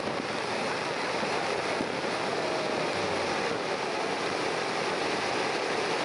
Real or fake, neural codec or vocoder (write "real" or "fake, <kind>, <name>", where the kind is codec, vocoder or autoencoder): real